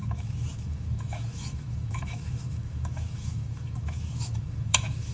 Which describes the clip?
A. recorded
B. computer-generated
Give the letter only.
B